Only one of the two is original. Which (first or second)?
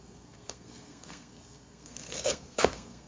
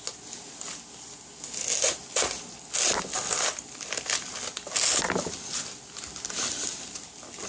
second